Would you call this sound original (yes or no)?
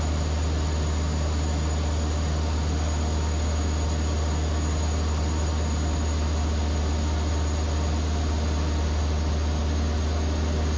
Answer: yes